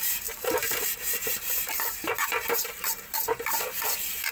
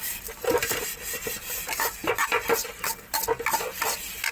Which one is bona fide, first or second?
second